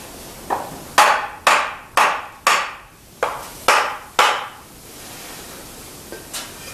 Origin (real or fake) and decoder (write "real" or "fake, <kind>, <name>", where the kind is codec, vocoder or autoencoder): real